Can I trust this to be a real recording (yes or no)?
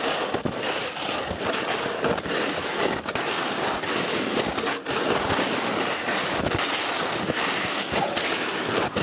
yes